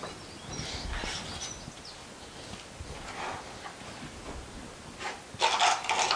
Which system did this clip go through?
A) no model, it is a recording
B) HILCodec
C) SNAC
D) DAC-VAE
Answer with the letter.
A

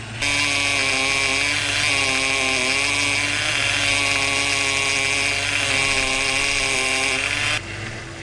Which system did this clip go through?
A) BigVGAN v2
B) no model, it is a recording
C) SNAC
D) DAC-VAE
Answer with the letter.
B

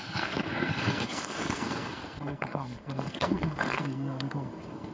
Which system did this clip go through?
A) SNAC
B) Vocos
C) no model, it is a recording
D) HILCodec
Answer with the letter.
A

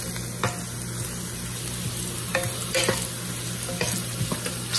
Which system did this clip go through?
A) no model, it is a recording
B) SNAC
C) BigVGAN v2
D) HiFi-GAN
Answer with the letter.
A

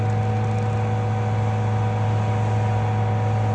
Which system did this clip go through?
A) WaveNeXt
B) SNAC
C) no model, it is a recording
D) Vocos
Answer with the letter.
C